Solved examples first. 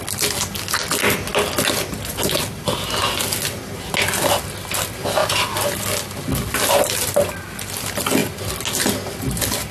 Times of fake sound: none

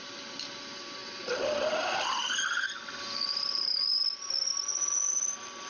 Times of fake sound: 4.7-5.3 (vocoder, Vocos)

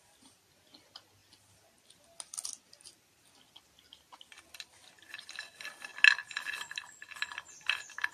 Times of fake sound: none

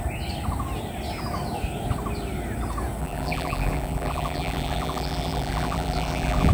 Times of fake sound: 3.0-6.5 (vocoder, BigVGAN v2)

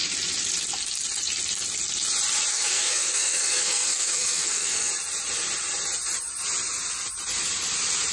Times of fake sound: 2.5-4.9 (codec, SNAC)

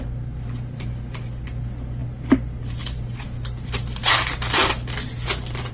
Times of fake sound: none

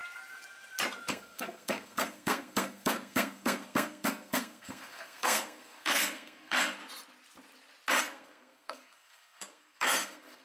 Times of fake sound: 1.1-6.8 (codec, SNAC); 8.0-10.4

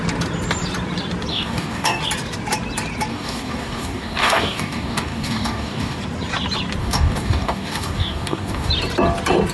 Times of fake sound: 1.3-2.0 (codec, DAC); 3.1-6.0; 6.8-8.7